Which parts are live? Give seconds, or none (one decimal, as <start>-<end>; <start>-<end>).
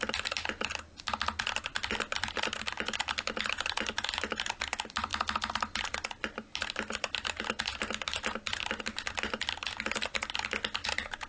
0.0-11.3